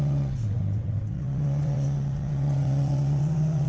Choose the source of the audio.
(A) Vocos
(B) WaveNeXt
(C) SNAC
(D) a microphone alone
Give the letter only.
B